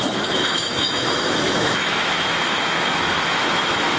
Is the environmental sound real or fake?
fake